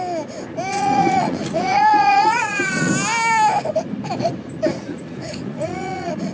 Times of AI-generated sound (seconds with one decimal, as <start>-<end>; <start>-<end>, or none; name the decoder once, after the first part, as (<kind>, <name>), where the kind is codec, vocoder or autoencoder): 0.7-2.9 (vocoder, Vocos); 4.9-6.3